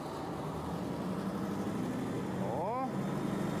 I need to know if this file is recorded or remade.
recorded